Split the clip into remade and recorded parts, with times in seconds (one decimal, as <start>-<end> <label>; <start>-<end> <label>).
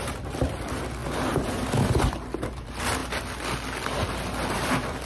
0.0-1.0 remade; 1.0-1.9 recorded; 1.9-3.0 remade; 3.0-4.5 recorded; 4.5-5.1 remade